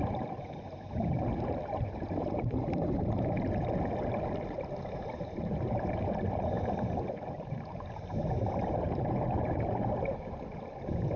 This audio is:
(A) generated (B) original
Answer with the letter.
A